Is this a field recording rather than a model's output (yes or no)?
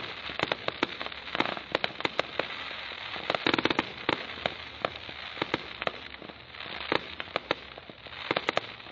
yes